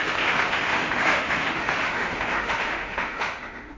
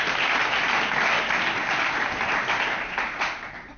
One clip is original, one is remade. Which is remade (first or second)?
first